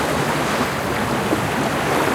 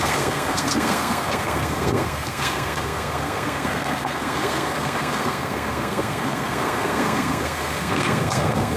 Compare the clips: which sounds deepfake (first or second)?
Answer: second